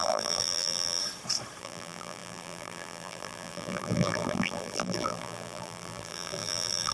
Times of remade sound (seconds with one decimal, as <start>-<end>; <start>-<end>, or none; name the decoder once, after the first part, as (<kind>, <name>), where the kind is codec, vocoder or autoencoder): 0.0-1.0 (vocoder, BigVGAN v2); 1.6-6.9